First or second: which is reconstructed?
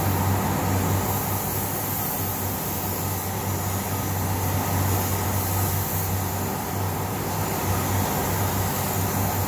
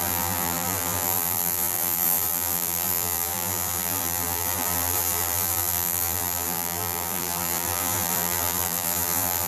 second